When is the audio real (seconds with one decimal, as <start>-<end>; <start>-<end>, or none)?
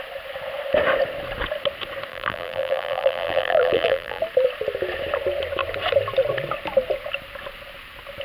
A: 0.0-2.1; 4.2-8.2